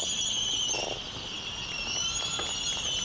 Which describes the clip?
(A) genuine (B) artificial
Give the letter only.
A